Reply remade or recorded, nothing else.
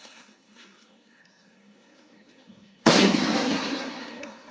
remade